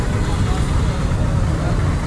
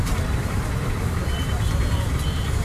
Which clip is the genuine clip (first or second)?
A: first